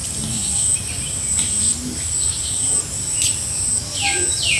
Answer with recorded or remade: recorded